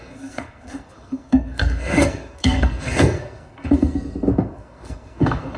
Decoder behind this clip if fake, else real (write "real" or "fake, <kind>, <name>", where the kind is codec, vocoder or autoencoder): fake, codec, SNAC